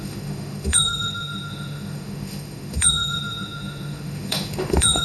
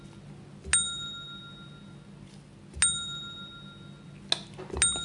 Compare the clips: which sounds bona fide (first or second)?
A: second